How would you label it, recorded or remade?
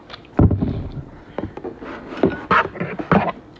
recorded